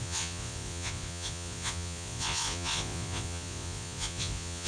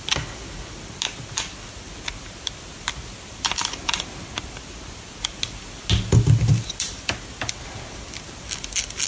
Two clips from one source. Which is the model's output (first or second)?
first